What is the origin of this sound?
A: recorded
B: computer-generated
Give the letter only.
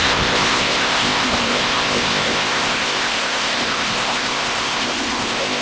B